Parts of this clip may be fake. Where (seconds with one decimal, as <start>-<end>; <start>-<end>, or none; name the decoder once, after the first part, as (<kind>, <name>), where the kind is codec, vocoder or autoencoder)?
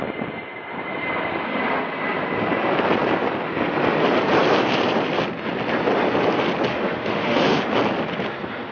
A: 6.7-7.6 (autoencoder, DAC-VAE)